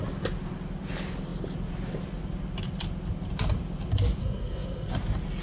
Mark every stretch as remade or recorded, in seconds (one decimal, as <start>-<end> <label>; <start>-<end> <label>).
0.0-4.2 recorded; 4.2-4.9 remade; 4.9-5.4 recorded